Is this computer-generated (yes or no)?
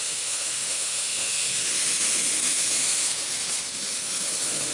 yes